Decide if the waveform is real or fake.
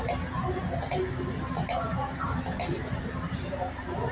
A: fake